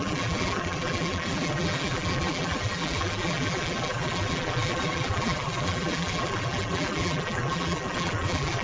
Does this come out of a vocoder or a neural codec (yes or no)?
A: yes